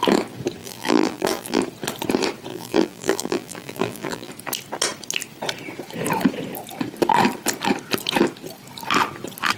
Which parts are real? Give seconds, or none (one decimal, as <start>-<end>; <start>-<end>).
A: 0.0-0.6; 1.6-2.5; 4.3-9.6